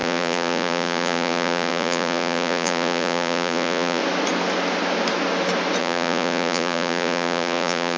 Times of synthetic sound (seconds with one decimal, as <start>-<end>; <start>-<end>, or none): 0.0-4.0; 5.8-8.0